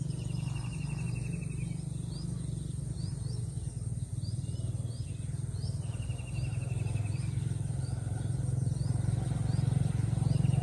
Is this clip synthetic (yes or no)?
no